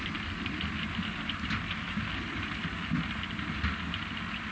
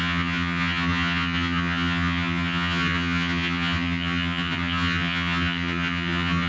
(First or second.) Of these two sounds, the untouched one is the first